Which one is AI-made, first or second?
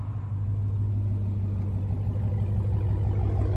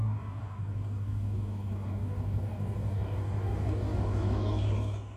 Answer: second